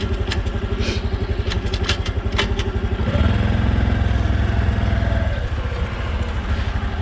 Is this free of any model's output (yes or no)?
yes